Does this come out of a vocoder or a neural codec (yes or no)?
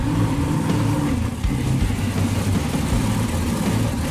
no